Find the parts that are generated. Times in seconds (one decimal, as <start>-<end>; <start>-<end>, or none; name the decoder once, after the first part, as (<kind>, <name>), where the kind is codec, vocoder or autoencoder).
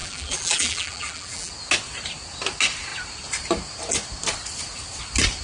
0.0-1.5 (vocoder, BigVGAN v2)